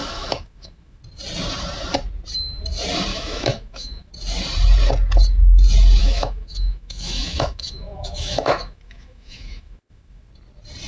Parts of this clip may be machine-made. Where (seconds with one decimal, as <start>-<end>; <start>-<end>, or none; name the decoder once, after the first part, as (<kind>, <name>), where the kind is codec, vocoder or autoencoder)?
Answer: 0.0-1.0 (autoencoder, DAC-VAE); 3.1-4.1; 6.0-10.3